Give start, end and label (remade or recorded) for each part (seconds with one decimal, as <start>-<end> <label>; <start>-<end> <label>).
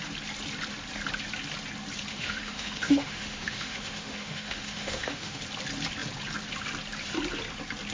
0.0-2.1 recorded; 2.1-5.4 remade; 5.4-7.9 recorded